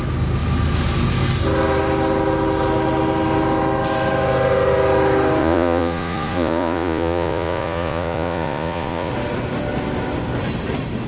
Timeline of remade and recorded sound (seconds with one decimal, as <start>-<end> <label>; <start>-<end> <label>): 0.0-5.4 recorded; 5.4-9.1 remade; 9.1-11.1 recorded